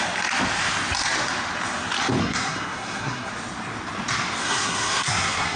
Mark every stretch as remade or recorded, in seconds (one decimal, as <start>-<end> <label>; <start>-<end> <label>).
0.0-2.2 recorded; 2.2-3.3 remade; 3.3-4.4 recorded; 4.4-5.6 remade